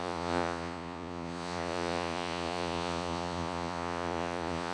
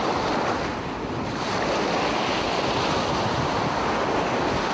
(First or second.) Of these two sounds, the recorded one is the second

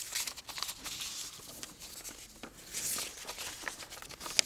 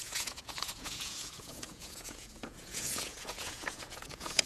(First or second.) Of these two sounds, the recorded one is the first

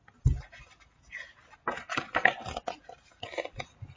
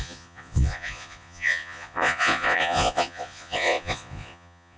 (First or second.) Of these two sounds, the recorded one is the first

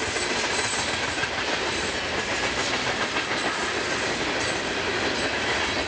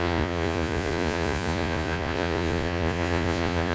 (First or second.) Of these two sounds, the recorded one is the first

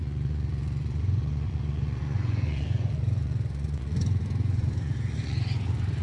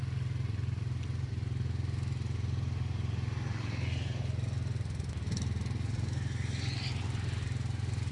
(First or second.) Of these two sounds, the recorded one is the second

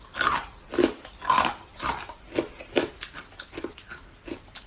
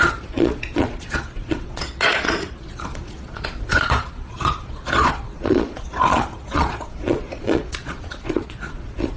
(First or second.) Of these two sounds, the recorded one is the first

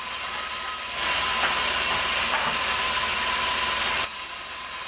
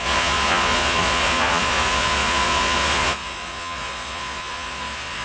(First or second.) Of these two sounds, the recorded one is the first